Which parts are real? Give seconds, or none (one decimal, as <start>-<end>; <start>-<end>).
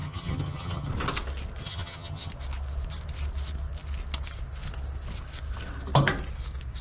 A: 0.9-1.6; 2.3-6.8